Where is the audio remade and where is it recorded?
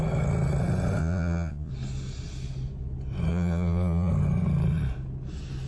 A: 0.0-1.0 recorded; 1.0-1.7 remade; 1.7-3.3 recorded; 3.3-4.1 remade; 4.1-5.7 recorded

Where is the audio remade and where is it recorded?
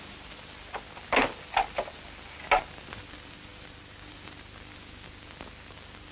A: 0.0-6.1 recorded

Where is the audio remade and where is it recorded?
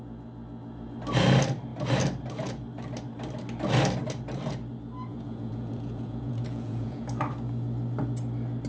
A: 0.0-5.1 recorded; 5.1-7.2 remade; 7.2-8.7 recorded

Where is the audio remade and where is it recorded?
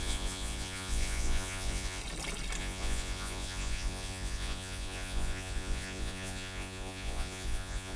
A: 0.0-2.0 remade; 2.0-2.6 recorded; 2.6-8.0 remade